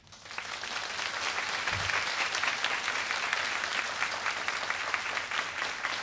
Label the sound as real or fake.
real